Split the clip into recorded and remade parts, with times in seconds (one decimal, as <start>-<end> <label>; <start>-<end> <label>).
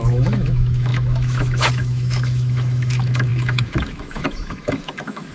0.0-5.3 remade